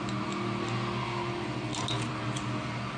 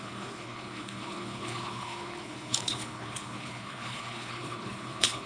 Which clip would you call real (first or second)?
first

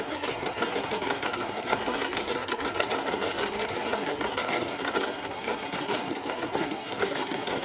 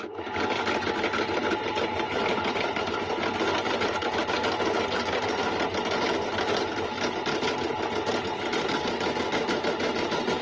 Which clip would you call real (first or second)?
second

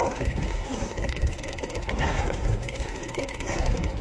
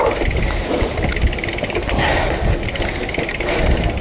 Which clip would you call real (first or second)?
second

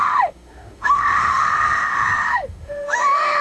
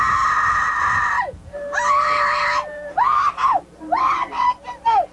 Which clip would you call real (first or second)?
second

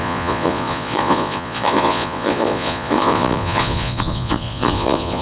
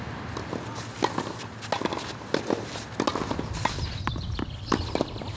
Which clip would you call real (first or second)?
second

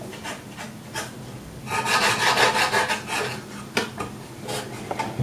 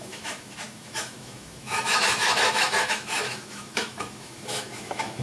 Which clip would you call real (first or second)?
first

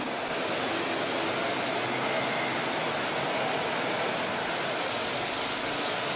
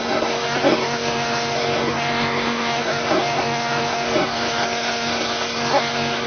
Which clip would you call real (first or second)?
first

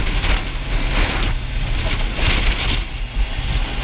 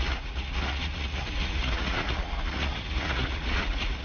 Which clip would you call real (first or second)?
first